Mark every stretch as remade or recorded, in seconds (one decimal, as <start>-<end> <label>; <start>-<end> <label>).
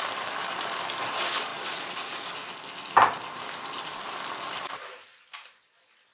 0.0-6.1 recorded